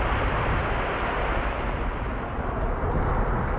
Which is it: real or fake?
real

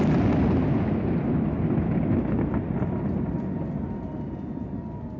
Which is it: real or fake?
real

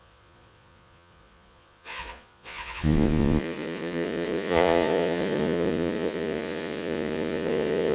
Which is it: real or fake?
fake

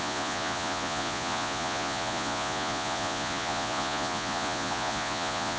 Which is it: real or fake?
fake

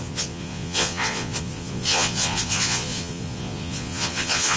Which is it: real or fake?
fake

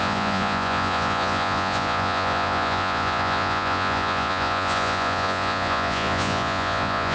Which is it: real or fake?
fake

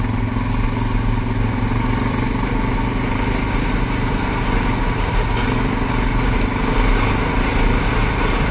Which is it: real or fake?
real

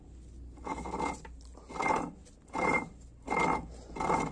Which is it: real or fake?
real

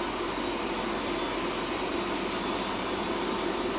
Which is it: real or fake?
real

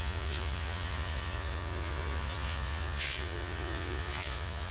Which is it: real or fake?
fake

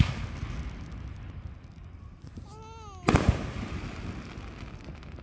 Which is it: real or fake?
real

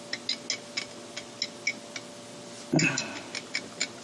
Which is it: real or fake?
real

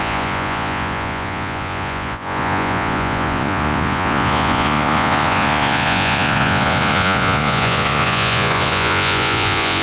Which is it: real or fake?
fake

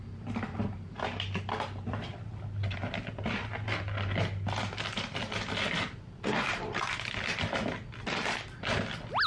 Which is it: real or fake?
real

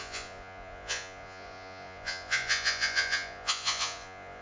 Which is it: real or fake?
fake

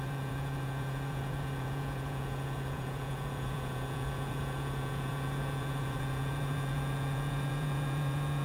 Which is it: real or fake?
fake